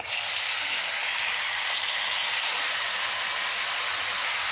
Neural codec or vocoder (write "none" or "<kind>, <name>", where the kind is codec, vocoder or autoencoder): none